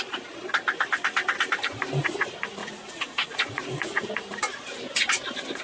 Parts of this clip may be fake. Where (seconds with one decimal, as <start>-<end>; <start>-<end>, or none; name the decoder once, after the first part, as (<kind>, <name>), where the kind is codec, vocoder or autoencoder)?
2.6-4.1 (vocoder, Vocos)